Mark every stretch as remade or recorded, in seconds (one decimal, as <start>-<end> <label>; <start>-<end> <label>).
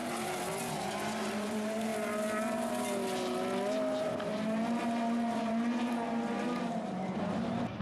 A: 0.0-0.7 recorded; 0.7-1.9 remade; 1.9-6.6 recorded; 6.6-7.8 remade